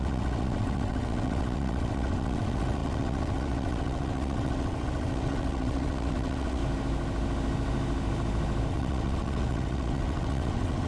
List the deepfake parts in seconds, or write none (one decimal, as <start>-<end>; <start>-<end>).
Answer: 0.0-6.6; 8.7-10.9